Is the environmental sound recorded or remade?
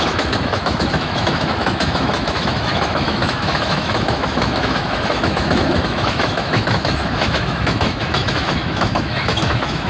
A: remade